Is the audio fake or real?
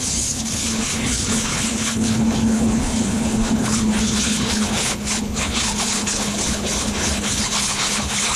fake